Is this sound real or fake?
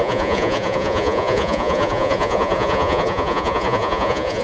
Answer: fake